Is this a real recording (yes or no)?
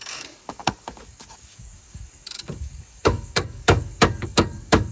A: no